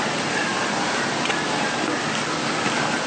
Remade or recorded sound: recorded